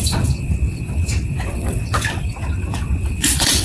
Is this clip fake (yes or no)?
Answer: yes